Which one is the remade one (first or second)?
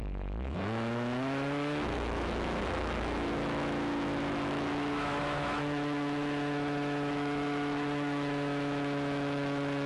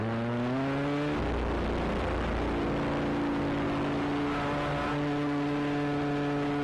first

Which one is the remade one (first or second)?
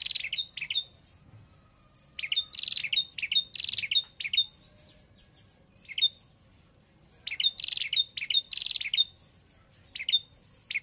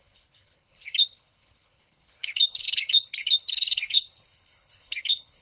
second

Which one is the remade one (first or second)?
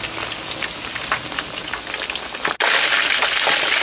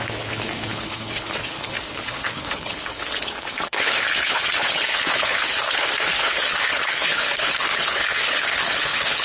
second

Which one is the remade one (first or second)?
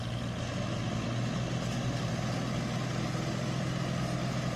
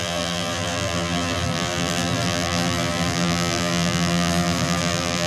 second